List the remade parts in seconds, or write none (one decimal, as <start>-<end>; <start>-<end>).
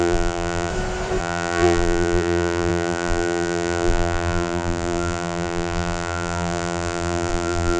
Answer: 0.0-0.7; 1.2-7.8